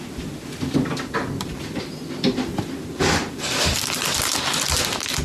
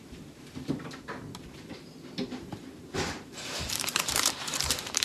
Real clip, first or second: first